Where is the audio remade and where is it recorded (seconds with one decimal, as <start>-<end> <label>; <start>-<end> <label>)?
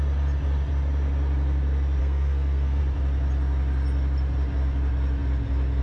0.0-2.0 recorded; 2.0-2.8 remade; 2.8-5.8 recorded